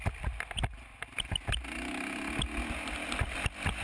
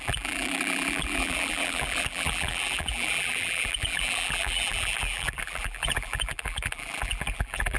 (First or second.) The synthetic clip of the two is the second